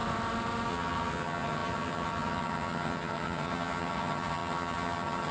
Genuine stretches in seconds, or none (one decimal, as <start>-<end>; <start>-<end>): 0.0-0.7